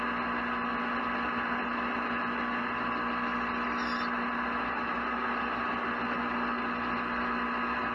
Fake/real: real